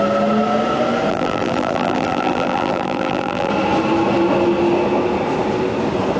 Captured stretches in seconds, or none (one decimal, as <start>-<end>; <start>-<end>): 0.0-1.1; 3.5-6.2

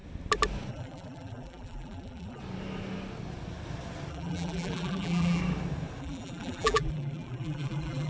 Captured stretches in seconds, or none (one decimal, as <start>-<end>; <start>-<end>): 0.0-0.7; 2.4-4.1; 5.4-6.0

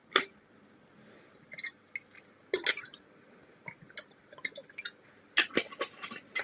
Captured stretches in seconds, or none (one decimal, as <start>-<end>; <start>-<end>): 1.4-6.4

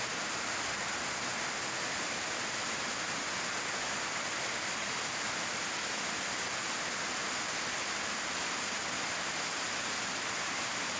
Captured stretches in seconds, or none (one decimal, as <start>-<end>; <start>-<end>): 0.0-1.3; 3.0-11.0

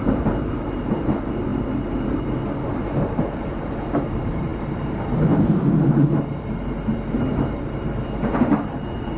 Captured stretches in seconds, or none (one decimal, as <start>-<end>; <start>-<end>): none

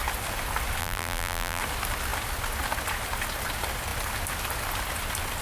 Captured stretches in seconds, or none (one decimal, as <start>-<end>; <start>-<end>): 0.0-0.8; 1.6-5.4

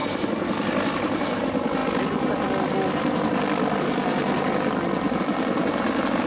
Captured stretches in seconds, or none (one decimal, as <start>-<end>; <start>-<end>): 1.4-6.3